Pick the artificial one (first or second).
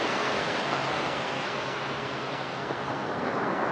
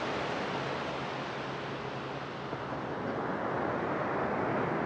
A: first